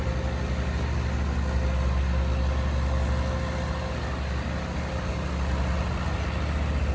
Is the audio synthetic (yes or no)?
no